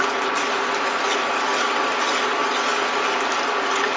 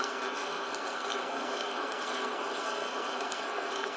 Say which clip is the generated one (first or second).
second